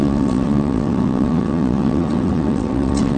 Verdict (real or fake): fake